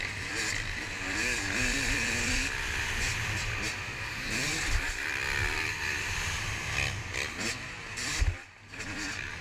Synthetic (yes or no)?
yes